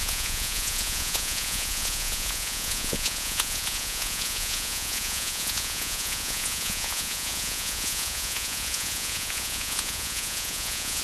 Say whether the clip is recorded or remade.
remade